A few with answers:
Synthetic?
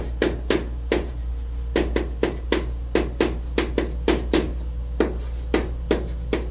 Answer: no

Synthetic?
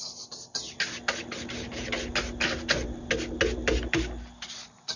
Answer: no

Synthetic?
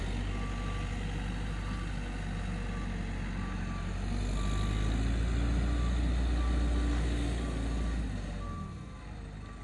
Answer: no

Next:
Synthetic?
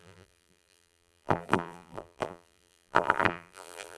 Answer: yes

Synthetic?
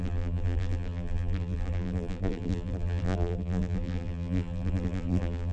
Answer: yes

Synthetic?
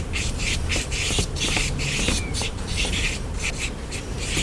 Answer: yes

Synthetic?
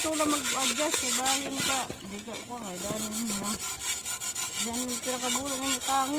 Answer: no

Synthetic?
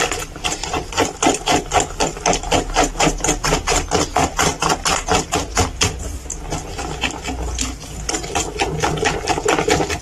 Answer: no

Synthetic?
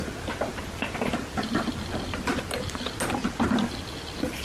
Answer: no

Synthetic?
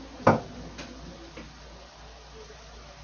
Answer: no